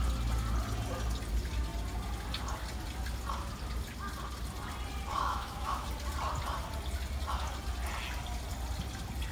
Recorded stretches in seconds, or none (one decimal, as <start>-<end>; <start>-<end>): 0.0-5.1; 5.9-9.3